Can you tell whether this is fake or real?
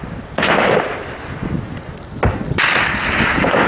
real